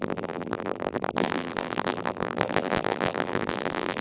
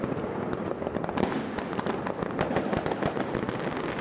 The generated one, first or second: first